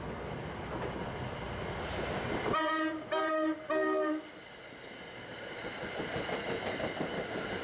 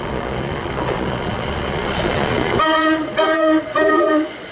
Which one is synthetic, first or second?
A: second